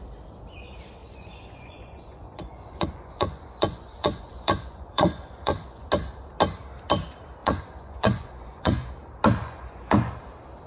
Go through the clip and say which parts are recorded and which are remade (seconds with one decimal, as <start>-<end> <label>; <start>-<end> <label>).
0.0-1.0 recorded; 1.0-5.9 remade; 5.9-7.4 recorded; 7.4-8.9 remade; 8.9-9.4 recorded; 9.4-10.1 remade; 10.1-10.7 recorded